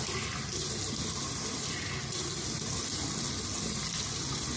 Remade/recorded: recorded